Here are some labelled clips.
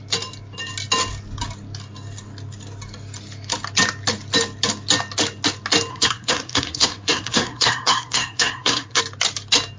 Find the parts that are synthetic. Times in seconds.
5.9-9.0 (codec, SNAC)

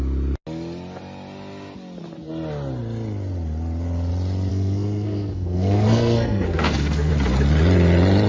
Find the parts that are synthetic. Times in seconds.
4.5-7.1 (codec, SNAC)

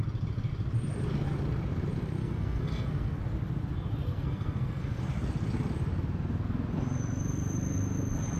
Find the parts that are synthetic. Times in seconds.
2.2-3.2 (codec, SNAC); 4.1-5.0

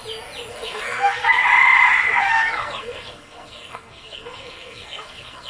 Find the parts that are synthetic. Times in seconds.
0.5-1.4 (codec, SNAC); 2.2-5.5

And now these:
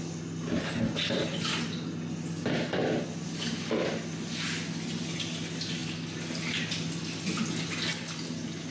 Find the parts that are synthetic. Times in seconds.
none